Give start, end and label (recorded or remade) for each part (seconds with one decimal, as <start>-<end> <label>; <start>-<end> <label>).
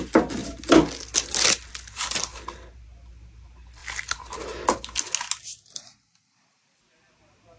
0.0-7.6 recorded